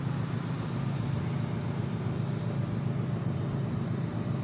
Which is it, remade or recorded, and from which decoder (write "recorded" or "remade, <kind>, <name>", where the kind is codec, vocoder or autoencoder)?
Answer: recorded